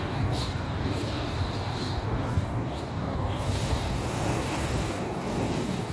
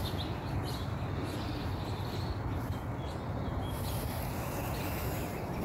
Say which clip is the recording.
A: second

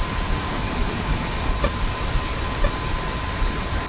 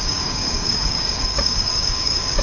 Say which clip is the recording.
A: first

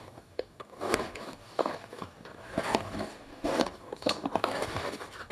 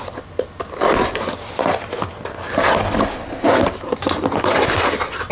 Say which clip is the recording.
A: second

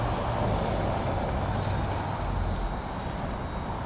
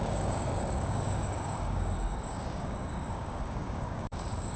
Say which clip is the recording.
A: first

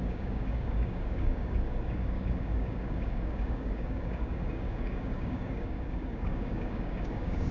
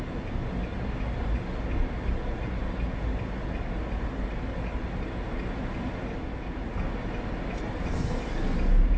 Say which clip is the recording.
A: second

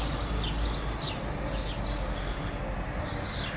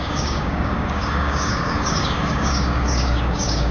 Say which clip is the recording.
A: first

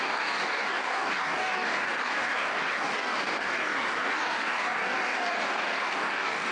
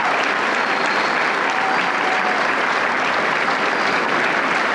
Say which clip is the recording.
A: second